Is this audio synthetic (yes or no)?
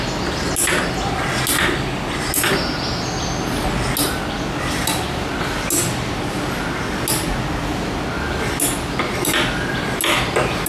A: no